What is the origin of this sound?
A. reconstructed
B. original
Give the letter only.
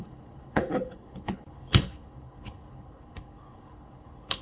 A